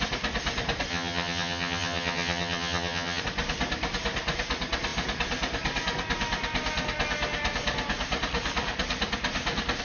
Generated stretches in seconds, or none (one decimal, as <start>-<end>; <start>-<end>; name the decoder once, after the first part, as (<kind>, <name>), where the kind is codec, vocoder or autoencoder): 0.9-3.2 (vocoder, HiFi-GAN)